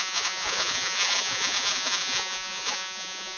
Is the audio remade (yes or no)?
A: yes